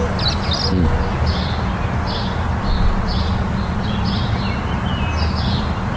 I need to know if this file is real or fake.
real